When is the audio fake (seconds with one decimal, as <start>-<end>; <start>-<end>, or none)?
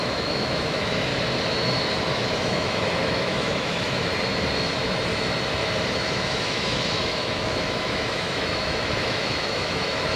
0.0-1.1; 2.1-4.1; 5.9-10.2